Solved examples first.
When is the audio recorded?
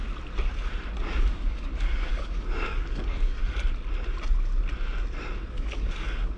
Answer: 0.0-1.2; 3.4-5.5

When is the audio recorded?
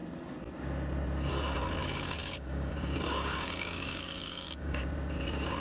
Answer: 0.0-1.8; 4.8-5.6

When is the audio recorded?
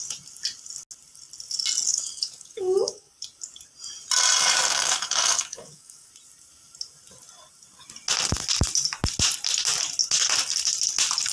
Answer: 0.0-1.9; 3.1-4.4; 6.1-11.3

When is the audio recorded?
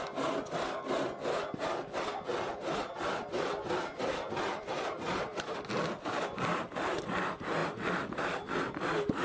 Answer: 0.0-9.2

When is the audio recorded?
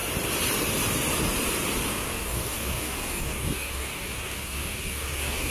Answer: 0.0-1.9